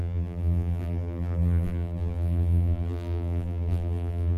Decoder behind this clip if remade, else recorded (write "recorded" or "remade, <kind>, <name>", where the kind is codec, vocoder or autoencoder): remade, vocoder, BigVGAN v2